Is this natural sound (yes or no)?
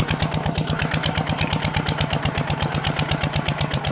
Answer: yes